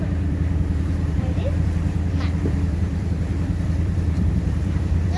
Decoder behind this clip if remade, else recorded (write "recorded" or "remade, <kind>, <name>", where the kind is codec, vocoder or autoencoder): remade, vocoder, BigVGAN v2